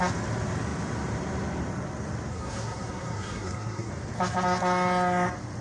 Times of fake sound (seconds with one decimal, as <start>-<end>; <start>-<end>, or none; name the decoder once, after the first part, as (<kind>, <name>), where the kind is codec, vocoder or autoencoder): 2.3-3.9 (codec, SNAC)